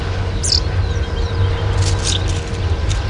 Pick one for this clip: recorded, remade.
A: recorded